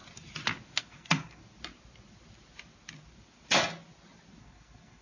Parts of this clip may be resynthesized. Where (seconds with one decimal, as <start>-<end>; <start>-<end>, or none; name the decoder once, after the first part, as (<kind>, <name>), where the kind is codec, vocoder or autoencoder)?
0.8-1.4 (codec, SNAC); 4.4-5.0